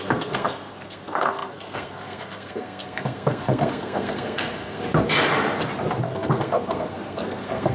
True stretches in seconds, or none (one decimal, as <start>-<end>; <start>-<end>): 4.8-6.0